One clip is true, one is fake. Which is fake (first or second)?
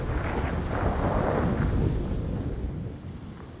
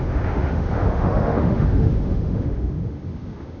second